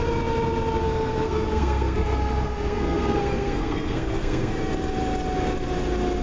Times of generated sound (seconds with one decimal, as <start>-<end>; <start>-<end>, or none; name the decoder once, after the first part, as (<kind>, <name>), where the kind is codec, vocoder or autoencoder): 0.8-4.5 (codec, SNAC)